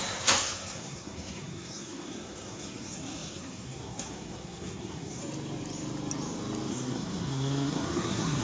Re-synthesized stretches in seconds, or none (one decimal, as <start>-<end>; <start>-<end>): 0.0-5.2; 6.7-8.4